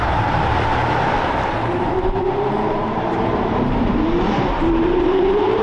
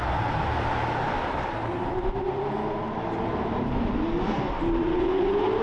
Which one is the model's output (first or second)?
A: first